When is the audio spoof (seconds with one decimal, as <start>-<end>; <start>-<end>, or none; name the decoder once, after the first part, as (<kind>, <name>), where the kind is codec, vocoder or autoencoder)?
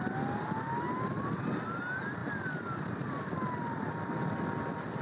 none